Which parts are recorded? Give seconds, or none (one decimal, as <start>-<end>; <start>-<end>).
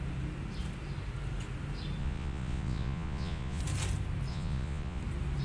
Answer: 0.0-2.0; 3.6-4.3; 5.0-5.4